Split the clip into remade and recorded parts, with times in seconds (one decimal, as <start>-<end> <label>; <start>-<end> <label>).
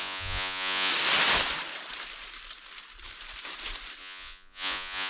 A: 0.0-0.9 remade; 0.9-4.0 recorded; 4.0-5.1 remade